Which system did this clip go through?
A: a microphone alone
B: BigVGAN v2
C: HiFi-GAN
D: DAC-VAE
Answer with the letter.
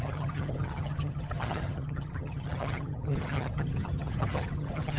C